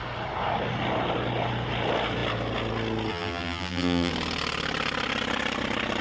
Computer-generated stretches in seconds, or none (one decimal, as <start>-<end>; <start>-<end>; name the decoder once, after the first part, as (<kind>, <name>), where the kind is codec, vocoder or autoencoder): 3.1-4.1 (vocoder, BigVGAN v2)